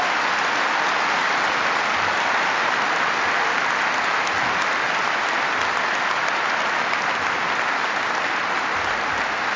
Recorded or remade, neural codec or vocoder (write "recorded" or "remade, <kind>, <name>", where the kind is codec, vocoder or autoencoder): recorded